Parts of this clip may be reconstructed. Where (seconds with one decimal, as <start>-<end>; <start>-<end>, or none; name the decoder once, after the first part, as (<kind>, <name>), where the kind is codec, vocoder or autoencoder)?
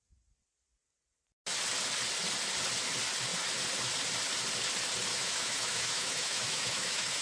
5.1-7.2 (autoencoder, DAC-VAE)